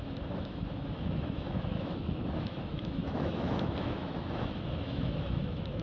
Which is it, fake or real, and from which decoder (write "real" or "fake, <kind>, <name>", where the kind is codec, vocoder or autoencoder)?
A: fake, autoencoder, DAC-VAE